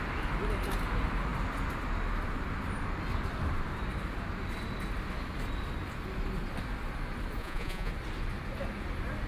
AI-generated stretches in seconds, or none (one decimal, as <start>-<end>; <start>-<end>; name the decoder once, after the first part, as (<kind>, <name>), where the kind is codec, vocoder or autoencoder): 7.4-7.9 (vocoder, Vocos)